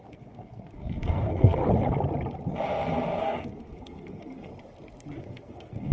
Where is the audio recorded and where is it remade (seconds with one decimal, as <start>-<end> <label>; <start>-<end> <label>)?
0.0-1.6 remade; 1.6-3.2 recorded; 3.2-4.5 remade; 4.5-5.2 recorded; 5.2-5.9 remade